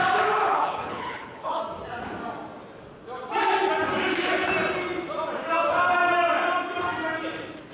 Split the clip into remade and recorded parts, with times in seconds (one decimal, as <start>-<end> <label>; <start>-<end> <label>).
0.0-0.4 recorded; 0.4-1.6 remade; 1.6-7.7 recorded